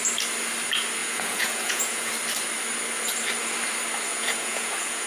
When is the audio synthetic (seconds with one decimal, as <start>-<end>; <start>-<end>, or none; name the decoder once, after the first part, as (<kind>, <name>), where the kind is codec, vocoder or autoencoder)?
1.0-2.1 (vocoder, Vocos); 4.1-5.1